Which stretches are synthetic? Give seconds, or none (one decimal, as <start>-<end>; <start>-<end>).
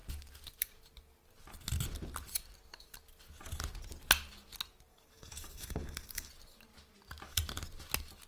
4.9-6.3